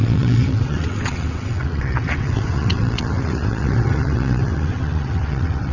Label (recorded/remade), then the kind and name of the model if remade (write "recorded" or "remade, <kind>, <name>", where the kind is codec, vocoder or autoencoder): remade, vocoder, WaveNeXt